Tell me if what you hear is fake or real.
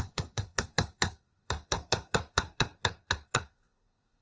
fake